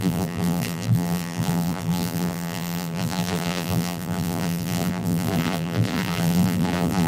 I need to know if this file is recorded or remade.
remade